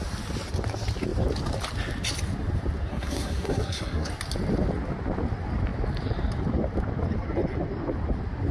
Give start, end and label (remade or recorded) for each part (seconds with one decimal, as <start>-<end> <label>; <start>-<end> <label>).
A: 0.0-2.9 recorded; 2.9-4.1 remade; 4.1-8.5 recorded